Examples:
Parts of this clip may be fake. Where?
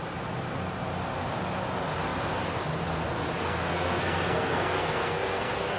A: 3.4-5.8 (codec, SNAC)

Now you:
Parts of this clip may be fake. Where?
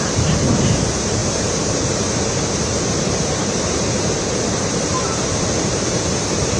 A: 0.0-6.6 (vocoder, BigVGAN v2)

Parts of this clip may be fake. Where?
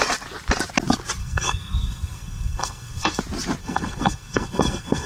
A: 1.2-3.2 (codec, SNAC); 3.6-5.1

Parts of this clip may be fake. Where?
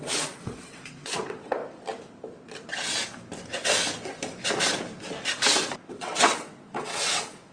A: 0.0-1.6 (vocoder, WaveNeXt); 5.9-7.5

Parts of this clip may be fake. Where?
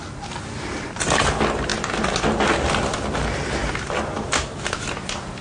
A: none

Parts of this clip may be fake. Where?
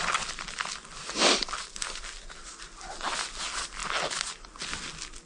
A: none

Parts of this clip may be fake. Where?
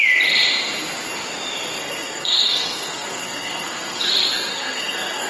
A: 1.8-4.0 (codec, SNAC); 4.5-5.3